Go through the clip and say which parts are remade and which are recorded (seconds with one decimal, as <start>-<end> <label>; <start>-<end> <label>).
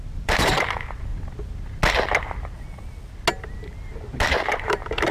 0.0-1.1 remade; 1.1-4.2 recorded; 4.2-5.1 remade